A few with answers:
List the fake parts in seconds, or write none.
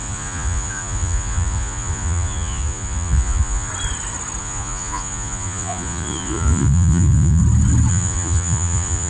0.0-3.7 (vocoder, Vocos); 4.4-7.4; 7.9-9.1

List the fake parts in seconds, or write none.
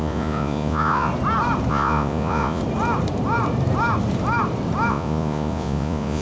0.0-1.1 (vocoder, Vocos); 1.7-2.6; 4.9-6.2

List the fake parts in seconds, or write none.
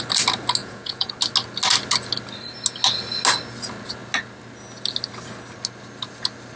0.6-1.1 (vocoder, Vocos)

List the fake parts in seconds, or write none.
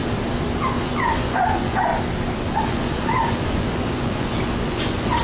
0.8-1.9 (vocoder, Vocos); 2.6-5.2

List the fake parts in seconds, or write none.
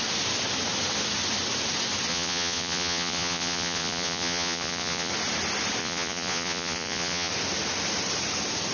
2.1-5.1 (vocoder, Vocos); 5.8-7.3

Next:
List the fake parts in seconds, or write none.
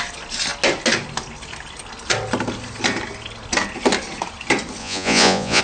4.8-5.6 (vocoder, Vocos)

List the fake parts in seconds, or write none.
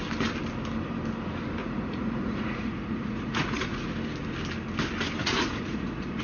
1.6-3.9 (vocoder, Vocos); 5.2-6.2